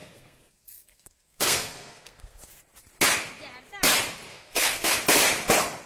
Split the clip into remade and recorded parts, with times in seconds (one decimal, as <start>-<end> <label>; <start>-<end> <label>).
0.0-2.6 remade; 2.6-4.3 recorded; 4.3-4.9 remade; 4.9-5.9 recorded